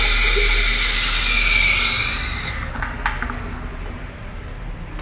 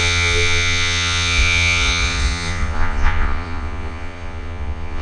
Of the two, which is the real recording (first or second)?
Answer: first